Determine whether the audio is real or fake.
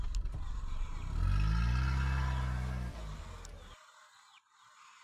real